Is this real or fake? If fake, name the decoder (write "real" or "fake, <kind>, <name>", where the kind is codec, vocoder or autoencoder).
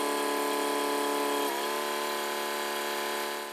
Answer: real